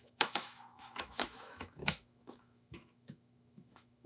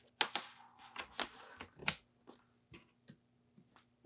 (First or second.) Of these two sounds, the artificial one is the first